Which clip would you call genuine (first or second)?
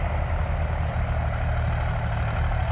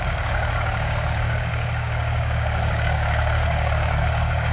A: first